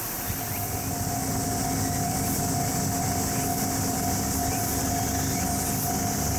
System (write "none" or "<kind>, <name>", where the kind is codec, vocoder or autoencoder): none